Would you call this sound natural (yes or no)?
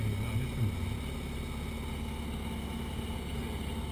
yes